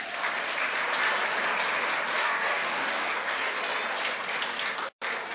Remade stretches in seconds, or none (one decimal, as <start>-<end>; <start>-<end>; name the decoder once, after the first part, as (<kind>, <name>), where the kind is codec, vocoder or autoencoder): 2.2-3.6 (codec, DAC)